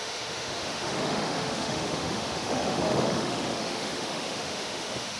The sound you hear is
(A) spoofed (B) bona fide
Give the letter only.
A